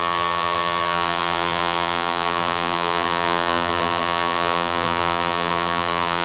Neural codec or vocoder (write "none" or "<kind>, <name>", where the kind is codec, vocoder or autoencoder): vocoder, BigVGAN v2